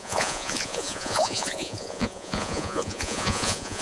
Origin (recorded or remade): remade